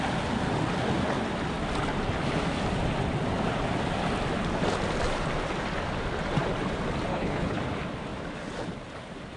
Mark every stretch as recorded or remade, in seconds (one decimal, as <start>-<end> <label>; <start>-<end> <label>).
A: 0.0-7.1 recorded; 7.1-7.6 remade; 7.6-9.4 recorded